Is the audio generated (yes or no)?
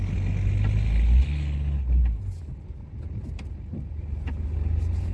no